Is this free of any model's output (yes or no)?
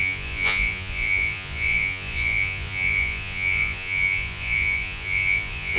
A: no